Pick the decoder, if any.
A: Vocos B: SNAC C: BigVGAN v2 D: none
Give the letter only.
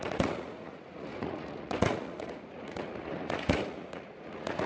A